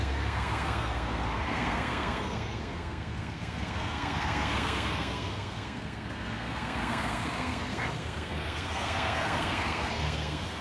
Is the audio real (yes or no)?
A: no